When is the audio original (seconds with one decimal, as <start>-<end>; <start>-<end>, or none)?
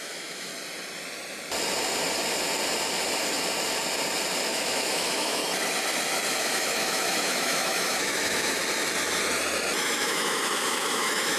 0.5-4.4; 5.4-6.4; 8.6-9.8